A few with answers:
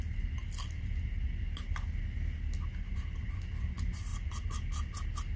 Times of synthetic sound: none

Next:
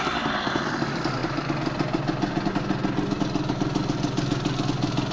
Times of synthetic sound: none

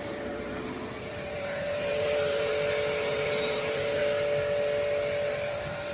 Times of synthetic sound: 0.0-2.5 (vocoder, BigVGAN v2); 3.0-4.0; 5.5-5.9

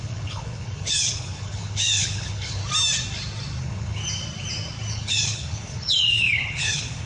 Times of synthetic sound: 0.0-2.6 (codec, HILCodec); 3.6-4.0; 4.9-7.1

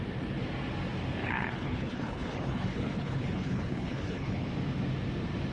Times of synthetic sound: 1.2-4.5 (codec, HILCodec)

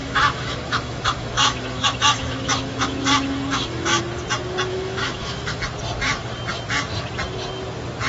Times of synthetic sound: 0.0-4.0 (autoencoder, DAC-VAE); 4.7-5.6

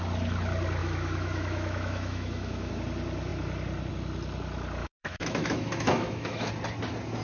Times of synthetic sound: 0.8-2.7 (autoencoder, DAC-VAE); 4.8-6.5